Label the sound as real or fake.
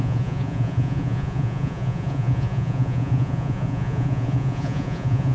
fake